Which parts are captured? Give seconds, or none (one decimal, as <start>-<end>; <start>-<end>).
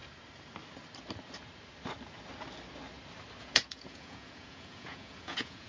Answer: 0.0-3.4